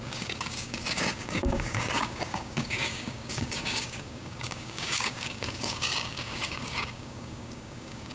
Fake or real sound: fake